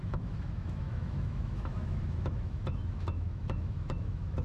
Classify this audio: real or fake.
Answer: fake